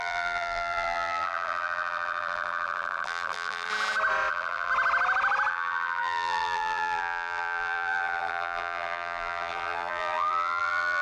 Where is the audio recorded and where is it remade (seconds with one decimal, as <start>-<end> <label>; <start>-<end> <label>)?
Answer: 0.0-3.7 remade; 3.7-4.3 recorded; 4.3-4.7 remade; 4.7-5.5 recorded; 5.5-11.0 remade